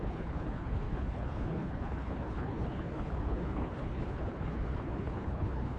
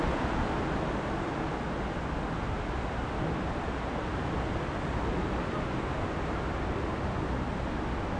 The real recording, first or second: second